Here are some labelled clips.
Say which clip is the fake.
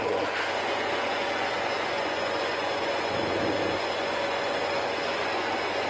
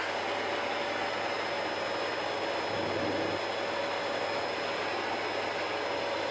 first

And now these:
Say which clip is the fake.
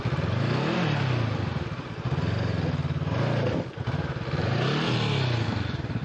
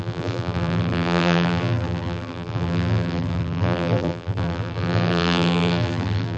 second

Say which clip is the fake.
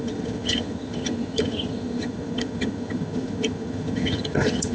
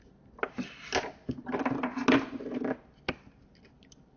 first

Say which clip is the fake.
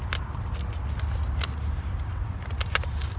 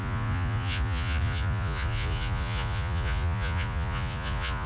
second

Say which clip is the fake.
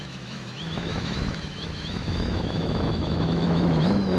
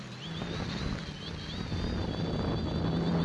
first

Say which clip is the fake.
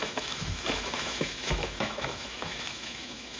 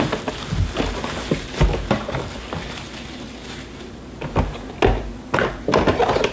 first